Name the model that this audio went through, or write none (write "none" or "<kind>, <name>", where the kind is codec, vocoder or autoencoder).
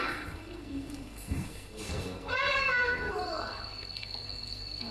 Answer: codec, SNAC